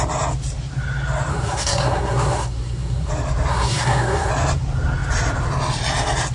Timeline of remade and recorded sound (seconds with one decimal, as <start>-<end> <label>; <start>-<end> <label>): 0.0-1.3 recorded; 1.3-3.1 remade; 3.1-3.5 recorded; 3.5-4.3 remade; 4.3-6.3 recorded